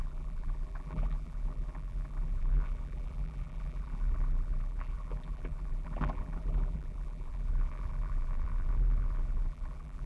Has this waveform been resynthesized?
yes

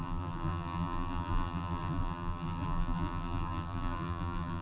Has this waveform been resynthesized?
yes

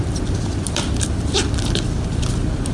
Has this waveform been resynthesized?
yes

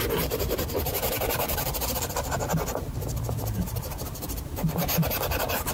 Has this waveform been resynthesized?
yes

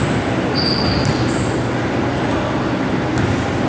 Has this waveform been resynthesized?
no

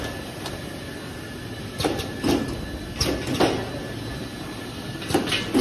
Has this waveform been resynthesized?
no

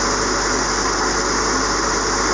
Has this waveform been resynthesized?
no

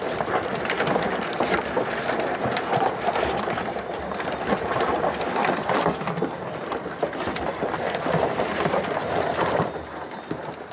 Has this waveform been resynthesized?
yes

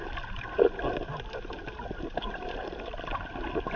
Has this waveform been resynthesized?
no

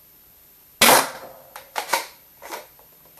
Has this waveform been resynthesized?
no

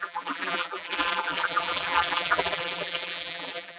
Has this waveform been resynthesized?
yes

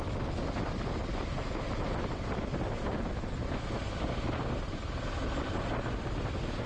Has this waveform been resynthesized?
no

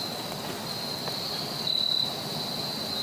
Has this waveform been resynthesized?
no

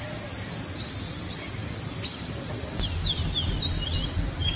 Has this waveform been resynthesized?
no